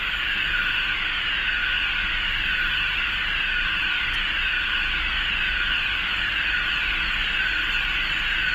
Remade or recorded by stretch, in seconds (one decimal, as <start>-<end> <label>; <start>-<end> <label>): 0.0-8.5 recorded